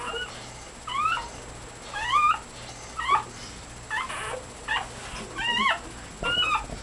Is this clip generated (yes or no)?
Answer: no